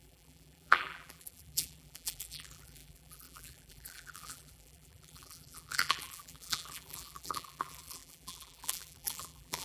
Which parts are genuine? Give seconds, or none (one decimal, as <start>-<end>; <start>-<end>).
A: none